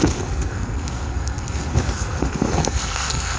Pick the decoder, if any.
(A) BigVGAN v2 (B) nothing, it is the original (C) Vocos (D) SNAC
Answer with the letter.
D